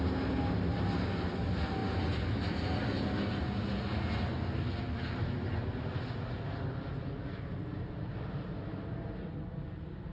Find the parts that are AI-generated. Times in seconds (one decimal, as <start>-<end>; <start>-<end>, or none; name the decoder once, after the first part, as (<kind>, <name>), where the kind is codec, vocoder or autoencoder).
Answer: none